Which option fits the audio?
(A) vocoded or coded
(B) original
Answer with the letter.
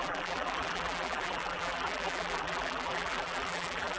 A